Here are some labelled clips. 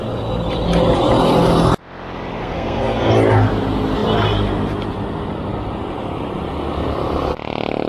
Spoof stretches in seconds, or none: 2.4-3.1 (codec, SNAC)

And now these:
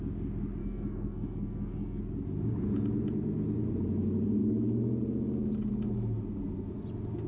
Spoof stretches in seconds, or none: 0.6-2.0 (codec, SNAC)

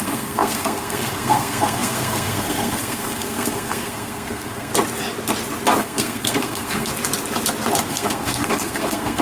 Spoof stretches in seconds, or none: 0.0-4.7 (codec, SNAC); 5.8-6.9; 7.9-9.2